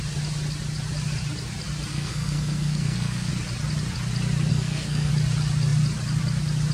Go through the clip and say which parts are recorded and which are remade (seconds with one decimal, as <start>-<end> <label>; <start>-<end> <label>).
0.0-1.9 recorded; 1.9-3.3 remade; 3.3-4.5 recorded; 4.5-5.1 remade; 5.1-6.7 recorded